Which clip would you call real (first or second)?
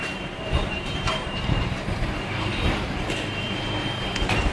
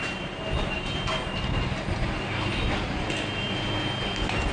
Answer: second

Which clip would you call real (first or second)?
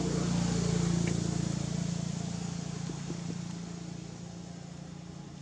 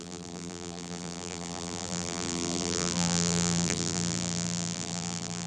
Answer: first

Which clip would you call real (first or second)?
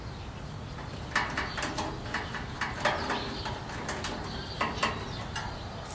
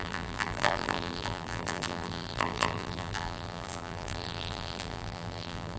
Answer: first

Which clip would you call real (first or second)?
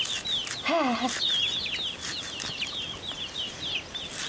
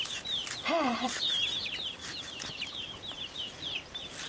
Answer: first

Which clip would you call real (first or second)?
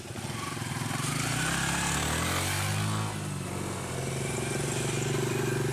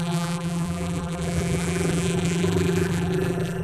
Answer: first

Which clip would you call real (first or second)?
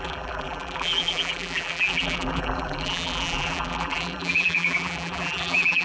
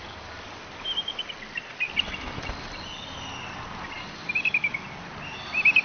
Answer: second